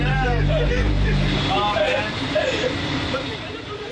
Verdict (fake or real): fake